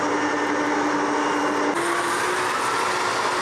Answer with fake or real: real